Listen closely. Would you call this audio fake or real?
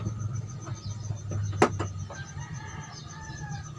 real